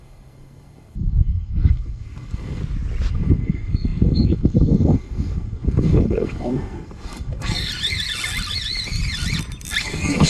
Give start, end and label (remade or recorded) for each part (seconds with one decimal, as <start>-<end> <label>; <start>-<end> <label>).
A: 0.0-2.6 remade; 2.6-3.1 recorded; 3.1-7.7 remade; 7.7-9.8 recorded; 9.8-10.3 remade